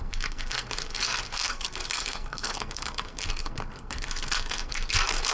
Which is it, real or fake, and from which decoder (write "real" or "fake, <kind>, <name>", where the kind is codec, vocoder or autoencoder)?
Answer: fake, codec, SNAC